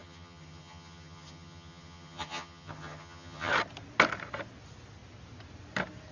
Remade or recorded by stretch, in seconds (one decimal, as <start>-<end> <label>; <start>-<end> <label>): 0.0-3.5 remade; 3.5-6.1 recorded